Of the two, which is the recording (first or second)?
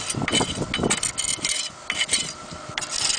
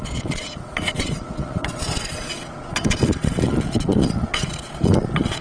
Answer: first